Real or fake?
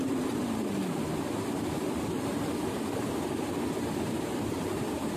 fake